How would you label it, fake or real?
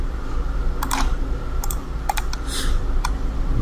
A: real